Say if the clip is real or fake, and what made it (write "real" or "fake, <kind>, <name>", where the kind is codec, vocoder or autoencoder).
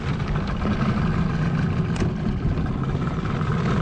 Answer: real